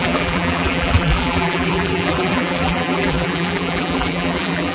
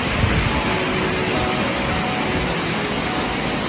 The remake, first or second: first